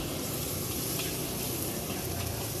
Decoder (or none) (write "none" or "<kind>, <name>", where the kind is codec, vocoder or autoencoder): none